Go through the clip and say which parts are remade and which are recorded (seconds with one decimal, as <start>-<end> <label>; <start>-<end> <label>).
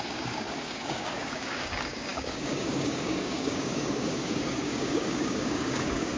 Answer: 0.0-6.2 remade